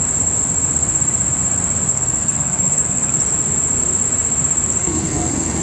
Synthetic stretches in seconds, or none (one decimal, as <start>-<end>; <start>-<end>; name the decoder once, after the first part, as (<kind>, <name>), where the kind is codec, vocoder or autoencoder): 1.9-3.1 (codec, SNAC); 4.8-5.6